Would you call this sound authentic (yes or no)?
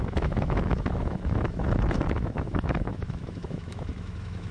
no